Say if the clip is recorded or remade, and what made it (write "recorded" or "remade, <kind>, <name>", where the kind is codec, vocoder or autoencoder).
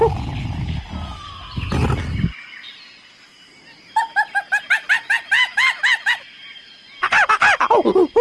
recorded